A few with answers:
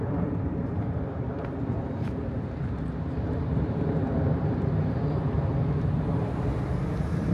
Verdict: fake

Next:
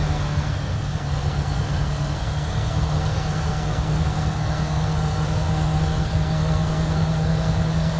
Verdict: fake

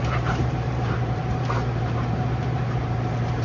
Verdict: fake